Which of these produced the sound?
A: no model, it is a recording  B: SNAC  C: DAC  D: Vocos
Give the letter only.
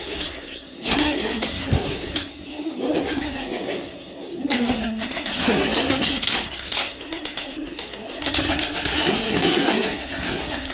B